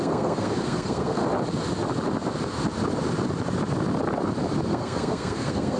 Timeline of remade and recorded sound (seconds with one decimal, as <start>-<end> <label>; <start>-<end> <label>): 0.0-1.2 remade; 1.2-4.7 recorded; 4.7-5.8 remade